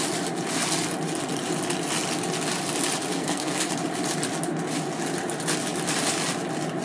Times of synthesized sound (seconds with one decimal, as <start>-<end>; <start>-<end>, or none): 3.1-3.7